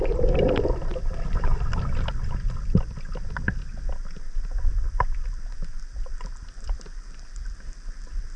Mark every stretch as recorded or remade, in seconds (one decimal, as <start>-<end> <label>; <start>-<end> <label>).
0.0-8.4 recorded